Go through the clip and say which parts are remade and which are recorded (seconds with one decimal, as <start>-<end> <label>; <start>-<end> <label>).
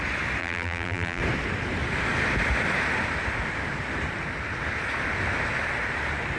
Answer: 0.0-0.4 recorded; 0.4-1.2 remade; 1.2-6.4 recorded